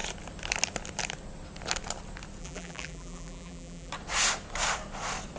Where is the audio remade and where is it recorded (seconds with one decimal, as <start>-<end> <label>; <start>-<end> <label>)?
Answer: 0.0-2.4 recorded; 2.4-3.9 remade; 3.9-5.4 recorded

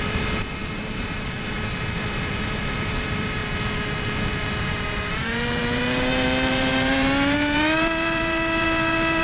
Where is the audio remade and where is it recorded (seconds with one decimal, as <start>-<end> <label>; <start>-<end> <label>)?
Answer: 0.0-3.4 remade; 3.4-4.6 recorded; 4.6-9.2 remade